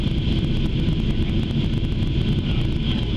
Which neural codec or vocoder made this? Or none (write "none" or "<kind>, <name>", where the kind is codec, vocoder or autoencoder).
none